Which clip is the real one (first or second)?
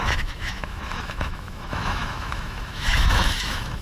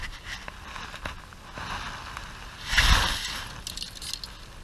second